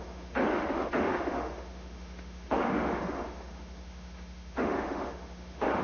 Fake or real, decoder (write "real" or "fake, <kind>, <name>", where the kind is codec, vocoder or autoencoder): fake, autoencoder, DAC-VAE